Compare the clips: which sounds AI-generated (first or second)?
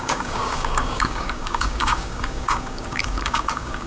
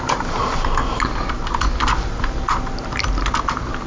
first